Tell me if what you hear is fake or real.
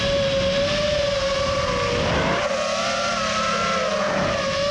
real